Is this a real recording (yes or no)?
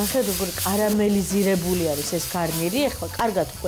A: yes